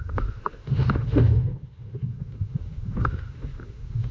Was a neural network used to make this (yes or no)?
yes